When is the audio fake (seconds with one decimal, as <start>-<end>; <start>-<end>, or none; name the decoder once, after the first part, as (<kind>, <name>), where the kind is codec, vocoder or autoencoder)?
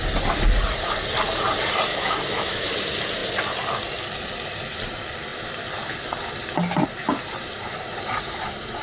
1.9-2.7 (autoencoder, DAC-VAE)